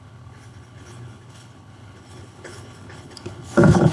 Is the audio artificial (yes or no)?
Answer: yes